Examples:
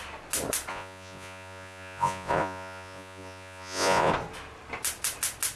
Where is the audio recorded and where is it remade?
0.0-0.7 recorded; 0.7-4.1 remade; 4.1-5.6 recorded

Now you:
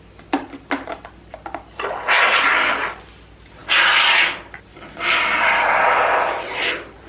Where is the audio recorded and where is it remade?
0.0-7.1 recorded

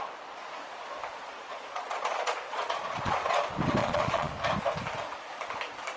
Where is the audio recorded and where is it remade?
0.0-1.2 recorded; 1.2-3.4 remade; 3.4-3.8 recorded; 3.8-4.3 remade; 4.3-6.0 recorded